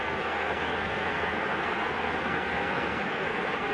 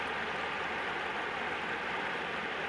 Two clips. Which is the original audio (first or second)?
second